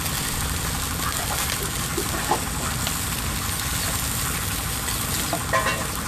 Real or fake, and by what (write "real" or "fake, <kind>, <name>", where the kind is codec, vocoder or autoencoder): real